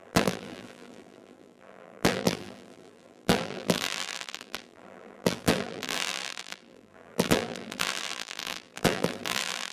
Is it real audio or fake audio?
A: fake